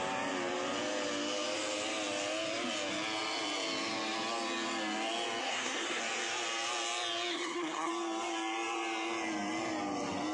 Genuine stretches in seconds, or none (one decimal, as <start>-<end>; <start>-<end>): 0.0-5.4; 6.0-7.3; 7.9-10.3